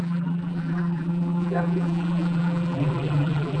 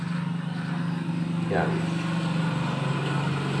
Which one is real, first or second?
second